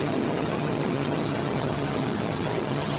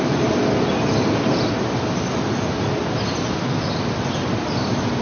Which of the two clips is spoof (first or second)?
first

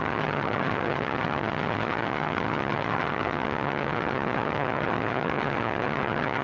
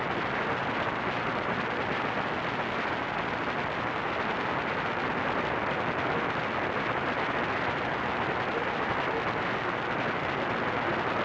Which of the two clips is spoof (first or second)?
first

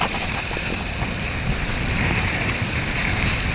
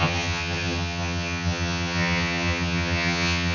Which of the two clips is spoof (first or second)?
second